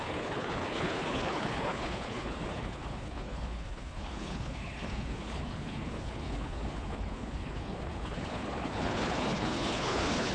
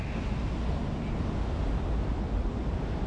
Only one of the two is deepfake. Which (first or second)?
first